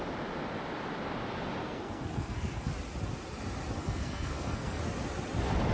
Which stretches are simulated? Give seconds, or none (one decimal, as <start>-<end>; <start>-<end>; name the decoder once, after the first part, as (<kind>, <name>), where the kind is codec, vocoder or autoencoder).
1.6-2.7 (codec, SNAC); 3.8-4.8